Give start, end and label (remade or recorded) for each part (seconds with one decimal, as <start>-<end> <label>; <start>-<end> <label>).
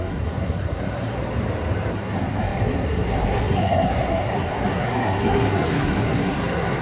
0.0-1.2 remade; 1.2-1.9 recorded; 1.9-6.8 remade